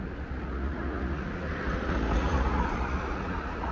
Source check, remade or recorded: remade